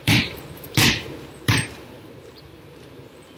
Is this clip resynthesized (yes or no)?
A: yes